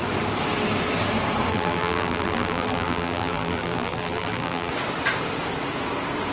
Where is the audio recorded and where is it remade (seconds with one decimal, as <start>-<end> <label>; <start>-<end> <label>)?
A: 0.0-1.5 recorded; 1.5-4.7 remade; 4.7-6.3 recorded